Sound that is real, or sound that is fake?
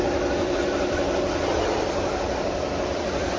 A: real